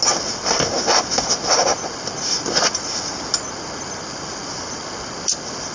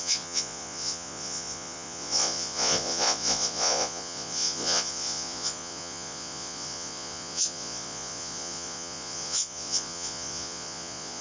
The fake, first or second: second